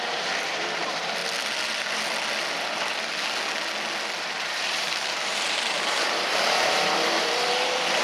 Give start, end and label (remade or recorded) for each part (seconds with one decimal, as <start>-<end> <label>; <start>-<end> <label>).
0.0-1.2 remade; 1.2-4.2 recorded; 4.2-8.0 remade